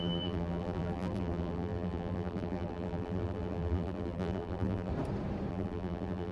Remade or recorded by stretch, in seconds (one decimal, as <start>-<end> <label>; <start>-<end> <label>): 0.0-4.9 remade; 4.9-5.5 recorded; 5.5-6.3 remade